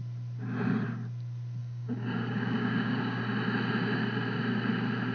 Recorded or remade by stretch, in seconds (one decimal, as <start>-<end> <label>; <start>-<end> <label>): 0.0-1.6 recorded; 1.6-3.2 remade; 3.2-5.1 recorded